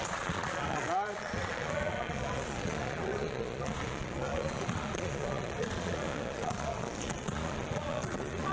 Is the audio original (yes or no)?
no